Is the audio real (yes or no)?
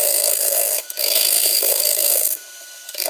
no